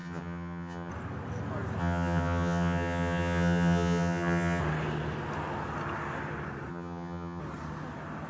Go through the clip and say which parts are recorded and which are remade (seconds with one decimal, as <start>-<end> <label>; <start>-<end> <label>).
0.0-0.9 remade; 0.9-1.8 recorded; 1.8-4.6 remade; 4.6-6.7 recorded; 6.7-7.4 remade; 7.4-8.3 recorded